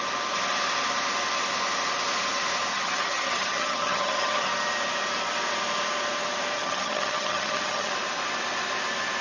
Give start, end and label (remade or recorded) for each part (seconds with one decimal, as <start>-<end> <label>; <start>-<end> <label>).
0.0-2.7 recorded; 2.7-4.5 remade; 4.5-6.6 recorded; 6.6-7.9 remade; 7.9-9.2 recorded